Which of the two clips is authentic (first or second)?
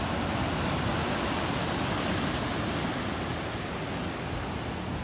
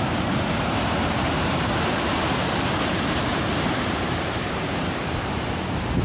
first